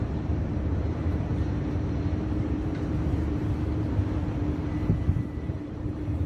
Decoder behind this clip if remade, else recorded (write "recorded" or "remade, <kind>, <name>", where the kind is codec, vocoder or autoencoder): remade, vocoder, BigVGAN v2